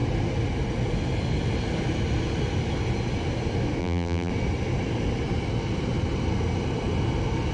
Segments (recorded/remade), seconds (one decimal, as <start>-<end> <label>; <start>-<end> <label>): 0.0-3.8 recorded; 3.8-4.3 remade; 4.3-7.5 recorded